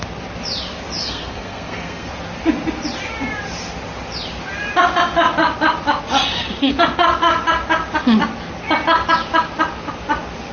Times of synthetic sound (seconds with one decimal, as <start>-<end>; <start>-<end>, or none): 1.0-2.1